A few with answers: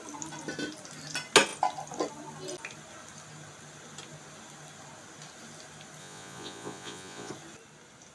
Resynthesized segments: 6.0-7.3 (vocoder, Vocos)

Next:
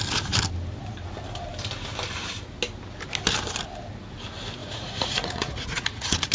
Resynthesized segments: 4.6-6.3 (vocoder, Vocos)

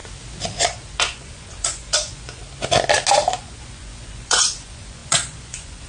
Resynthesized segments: 0.6-2.4 (vocoder, Vocos); 3.4-5.9

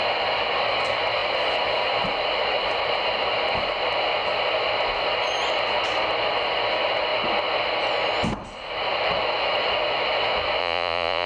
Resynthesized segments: 10.6-11.3 (vocoder, Vocos)

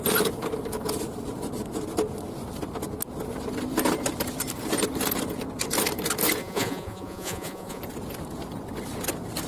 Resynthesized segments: 6.4-7.8 (vocoder, Vocos)

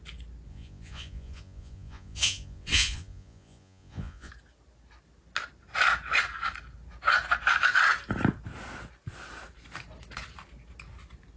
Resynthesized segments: 0.5-4.3 (vocoder, Vocos)